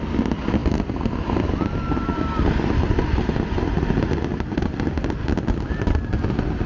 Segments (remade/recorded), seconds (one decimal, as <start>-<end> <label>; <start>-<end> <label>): 0.0-6.7 recorded